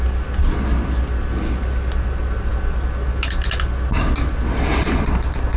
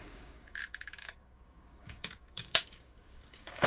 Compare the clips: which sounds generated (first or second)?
second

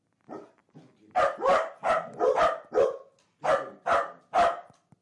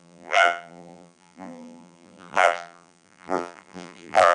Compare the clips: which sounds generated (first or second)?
second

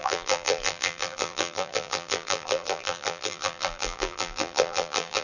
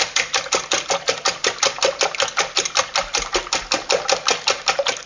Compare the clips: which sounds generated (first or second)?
first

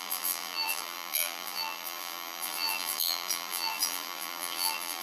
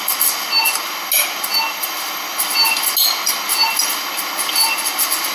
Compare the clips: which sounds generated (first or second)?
first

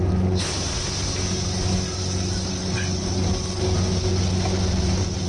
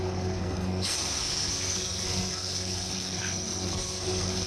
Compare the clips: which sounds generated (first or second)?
second